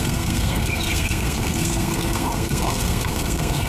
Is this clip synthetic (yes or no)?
yes